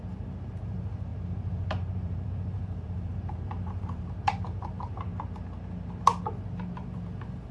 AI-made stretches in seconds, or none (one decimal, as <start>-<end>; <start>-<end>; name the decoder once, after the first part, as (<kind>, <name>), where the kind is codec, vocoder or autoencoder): 0.0-5.1 (vocoder, BigVGAN v2); 6.2-7.5